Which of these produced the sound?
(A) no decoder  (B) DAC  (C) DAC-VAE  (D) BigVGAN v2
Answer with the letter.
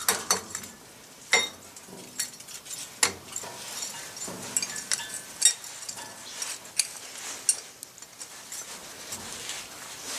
A